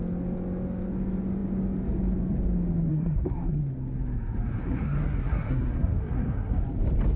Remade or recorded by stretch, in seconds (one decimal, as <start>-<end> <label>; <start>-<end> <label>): 0.0-2.9 recorded; 2.9-3.6 remade; 3.6-4.6 recorded; 4.6-6.6 remade; 6.6-7.2 recorded